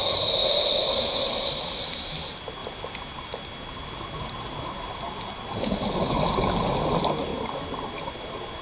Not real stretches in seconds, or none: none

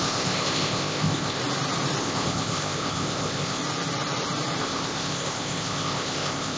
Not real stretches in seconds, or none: 0.0-1.4 (codec, ZipCodec); 2.0-3.6; 4.6-6.6

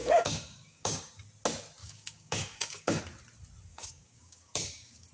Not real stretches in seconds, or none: 0.0-1.1 (codec, DAC); 1.8-3.0; 3.7-5.1

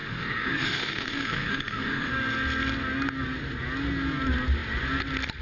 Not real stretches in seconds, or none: 0.0-2.1 (autoencoder, DAC-VAE)